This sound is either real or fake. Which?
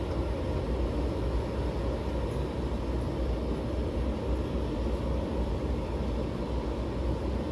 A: real